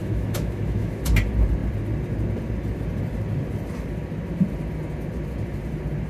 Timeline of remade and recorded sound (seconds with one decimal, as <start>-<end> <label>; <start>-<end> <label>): 0.0-1.0 remade; 1.0-6.1 recorded